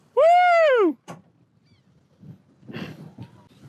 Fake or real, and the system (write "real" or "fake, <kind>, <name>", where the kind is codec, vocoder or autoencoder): real